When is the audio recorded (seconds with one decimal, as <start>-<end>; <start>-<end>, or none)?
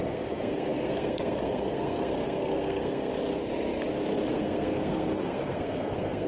3.1-4.3